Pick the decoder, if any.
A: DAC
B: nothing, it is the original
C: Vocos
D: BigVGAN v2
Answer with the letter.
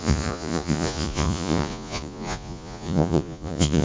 C